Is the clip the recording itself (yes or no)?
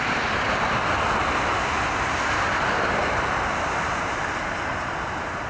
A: yes